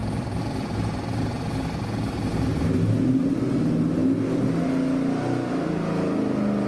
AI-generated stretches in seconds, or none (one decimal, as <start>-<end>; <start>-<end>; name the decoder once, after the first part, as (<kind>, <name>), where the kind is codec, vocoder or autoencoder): none